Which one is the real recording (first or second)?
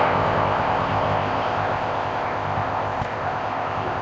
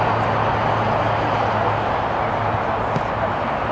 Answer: second